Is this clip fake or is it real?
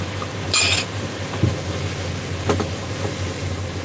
real